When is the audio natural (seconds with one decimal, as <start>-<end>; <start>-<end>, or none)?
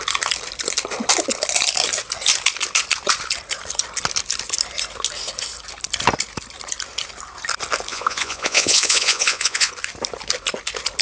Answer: 0.0-7.9; 9.7-11.0